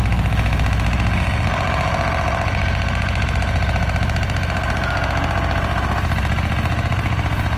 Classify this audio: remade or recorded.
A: recorded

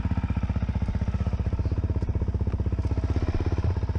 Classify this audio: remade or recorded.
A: recorded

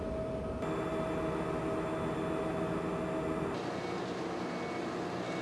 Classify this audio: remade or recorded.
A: recorded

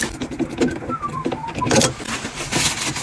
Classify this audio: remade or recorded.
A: recorded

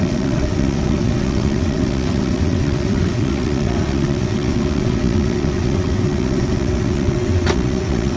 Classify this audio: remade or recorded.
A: remade